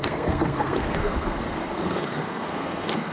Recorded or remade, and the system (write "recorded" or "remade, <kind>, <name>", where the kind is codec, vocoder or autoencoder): remade, codec, SNAC